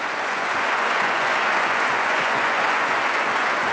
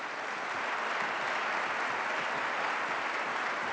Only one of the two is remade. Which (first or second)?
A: first